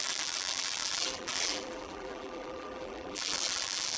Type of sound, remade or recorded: remade